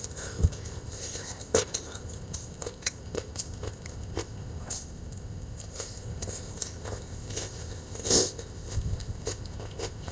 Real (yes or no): no